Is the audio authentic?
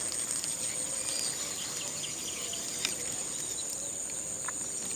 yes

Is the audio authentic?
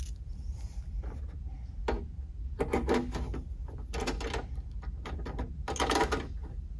yes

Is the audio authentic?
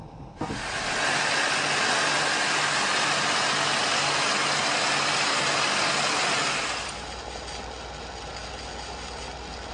yes